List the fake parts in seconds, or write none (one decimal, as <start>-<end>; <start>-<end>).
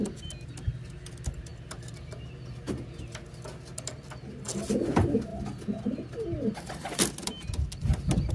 none